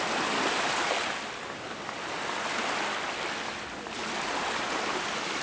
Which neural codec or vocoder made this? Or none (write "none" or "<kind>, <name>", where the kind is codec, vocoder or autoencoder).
none